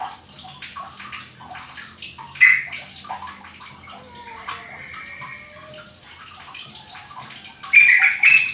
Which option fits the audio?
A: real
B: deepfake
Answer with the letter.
A